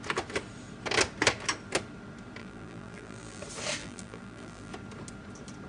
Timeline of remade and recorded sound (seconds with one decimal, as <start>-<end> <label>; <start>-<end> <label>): 0.0-2.4 recorded; 2.4-3.4 remade; 3.4-3.8 recorded; 3.8-4.7 remade; 4.7-5.7 recorded